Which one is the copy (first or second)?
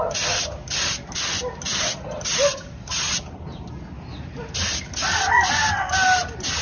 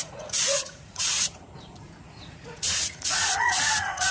second